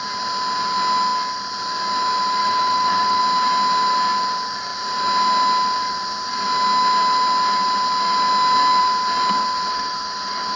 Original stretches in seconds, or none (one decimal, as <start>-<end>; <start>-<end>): 0.0-2.4; 3.2-9.7